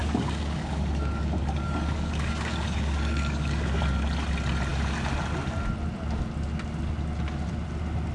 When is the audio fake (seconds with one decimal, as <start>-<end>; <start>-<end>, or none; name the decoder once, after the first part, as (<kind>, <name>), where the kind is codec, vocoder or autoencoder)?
0.0-3.8 (codec, DAC)